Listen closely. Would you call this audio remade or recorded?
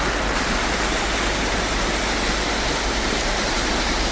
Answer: recorded